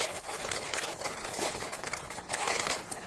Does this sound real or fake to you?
fake